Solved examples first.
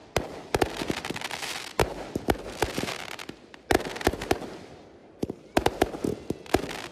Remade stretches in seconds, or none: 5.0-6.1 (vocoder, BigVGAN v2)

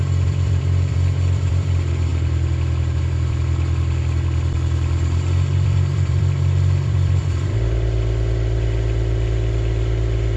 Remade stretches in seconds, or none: 0.0-2.1 (vocoder, BigVGAN v2); 3.0-10.4

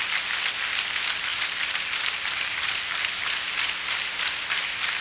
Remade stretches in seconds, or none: 1.3-4.3 (vocoder, BigVGAN v2)

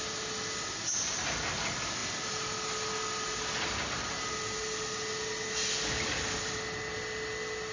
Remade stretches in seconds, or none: none

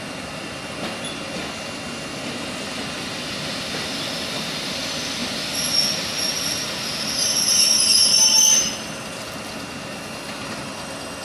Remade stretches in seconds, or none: none